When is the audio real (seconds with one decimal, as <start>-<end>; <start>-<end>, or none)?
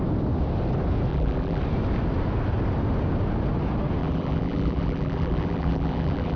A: 0.0-1.1; 1.6-4.0